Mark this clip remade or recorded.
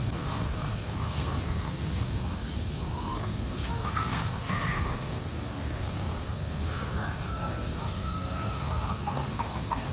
remade